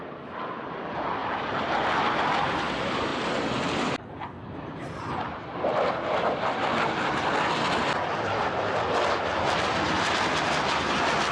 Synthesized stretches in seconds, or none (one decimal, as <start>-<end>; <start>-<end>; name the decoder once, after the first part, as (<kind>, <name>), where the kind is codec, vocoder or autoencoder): none